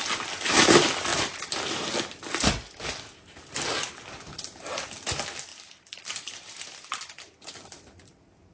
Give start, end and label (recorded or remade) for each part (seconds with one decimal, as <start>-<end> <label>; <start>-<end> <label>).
0.0-1.1 recorded; 1.1-1.9 remade; 1.9-5.5 recorded; 5.5-6.9 remade; 6.9-8.5 recorded